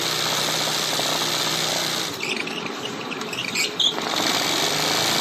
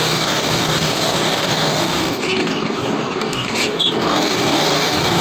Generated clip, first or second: second